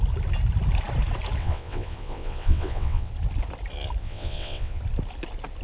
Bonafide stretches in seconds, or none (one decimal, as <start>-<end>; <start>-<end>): 0.0-1.4; 3.1-4.0; 4.8-5.6